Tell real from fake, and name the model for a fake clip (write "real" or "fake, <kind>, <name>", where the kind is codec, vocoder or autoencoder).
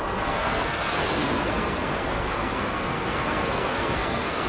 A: fake, codec, SNAC